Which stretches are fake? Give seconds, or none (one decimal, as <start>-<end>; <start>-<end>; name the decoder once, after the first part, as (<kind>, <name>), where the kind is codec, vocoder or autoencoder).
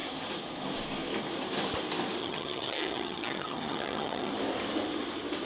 2.2-4.3 (vocoder, HiFi-GAN)